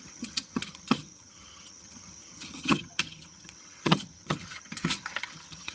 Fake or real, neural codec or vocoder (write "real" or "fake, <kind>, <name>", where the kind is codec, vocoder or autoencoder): fake, vocoder, HiFi-GAN